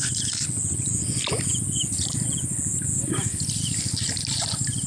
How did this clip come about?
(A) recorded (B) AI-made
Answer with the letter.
A